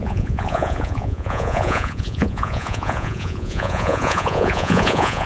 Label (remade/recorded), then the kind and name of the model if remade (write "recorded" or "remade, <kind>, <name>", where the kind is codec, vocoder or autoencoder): remade, vocoder, Vocos